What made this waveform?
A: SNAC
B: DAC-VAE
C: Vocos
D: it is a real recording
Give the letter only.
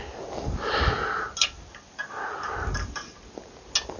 D